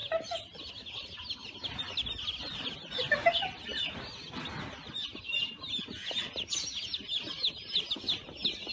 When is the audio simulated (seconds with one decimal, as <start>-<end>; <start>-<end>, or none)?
none